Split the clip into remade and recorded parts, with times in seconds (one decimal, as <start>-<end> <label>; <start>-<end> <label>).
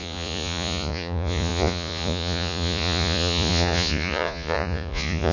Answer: 0.0-5.3 remade